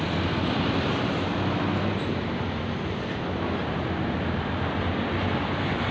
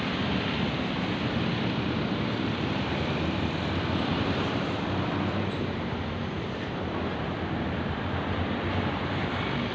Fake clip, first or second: second